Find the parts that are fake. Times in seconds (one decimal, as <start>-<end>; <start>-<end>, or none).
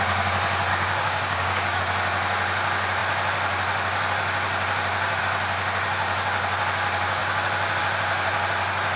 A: 0.7-1.8